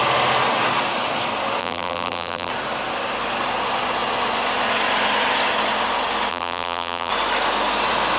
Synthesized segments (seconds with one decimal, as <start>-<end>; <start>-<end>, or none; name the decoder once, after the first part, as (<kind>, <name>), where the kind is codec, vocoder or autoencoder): 1.6-2.5 (vocoder, BigVGAN v2); 6.3-7.1